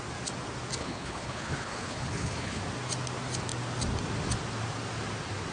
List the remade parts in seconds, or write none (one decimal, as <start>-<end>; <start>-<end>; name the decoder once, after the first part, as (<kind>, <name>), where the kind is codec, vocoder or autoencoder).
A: 0.8-2.6 (codec, HILCodec)